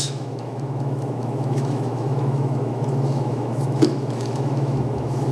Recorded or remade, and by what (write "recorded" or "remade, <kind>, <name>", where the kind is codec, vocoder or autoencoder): remade, autoencoder, DAC-VAE